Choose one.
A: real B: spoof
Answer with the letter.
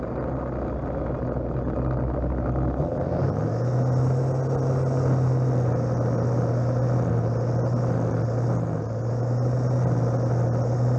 A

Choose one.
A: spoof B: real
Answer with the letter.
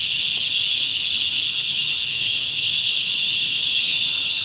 A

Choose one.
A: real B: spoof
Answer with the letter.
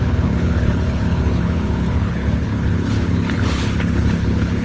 B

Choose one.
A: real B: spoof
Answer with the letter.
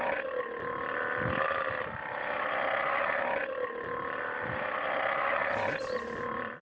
A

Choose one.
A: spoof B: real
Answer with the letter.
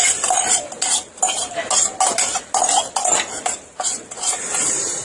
B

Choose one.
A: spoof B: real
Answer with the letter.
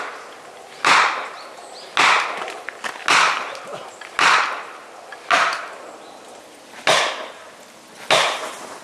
B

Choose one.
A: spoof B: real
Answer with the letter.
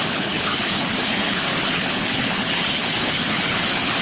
A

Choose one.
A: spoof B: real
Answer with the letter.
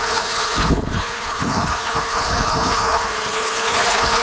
A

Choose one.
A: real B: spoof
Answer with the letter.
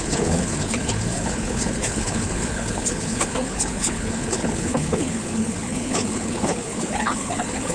B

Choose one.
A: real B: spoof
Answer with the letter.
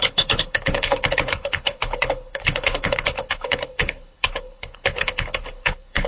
B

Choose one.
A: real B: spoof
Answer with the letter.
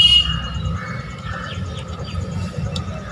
A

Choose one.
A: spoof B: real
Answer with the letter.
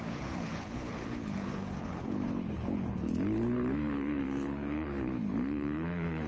A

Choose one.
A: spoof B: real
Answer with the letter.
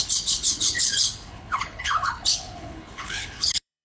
A